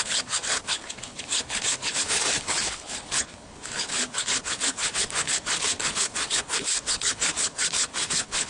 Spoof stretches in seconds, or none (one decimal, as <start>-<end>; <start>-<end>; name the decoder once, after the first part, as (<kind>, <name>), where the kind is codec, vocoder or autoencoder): 0.0-8.5 (codec, HILCodec)